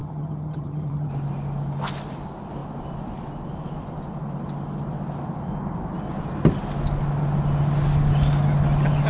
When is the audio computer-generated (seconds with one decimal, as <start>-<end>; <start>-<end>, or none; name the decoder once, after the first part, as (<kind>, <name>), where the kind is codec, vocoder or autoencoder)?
0.0-1.1 (vocoder, HiFi-GAN)